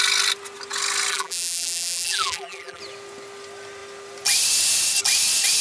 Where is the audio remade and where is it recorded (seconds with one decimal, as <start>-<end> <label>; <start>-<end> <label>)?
0.0-1.1 recorded; 1.1-2.8 remade; 2.8-5.6 recorded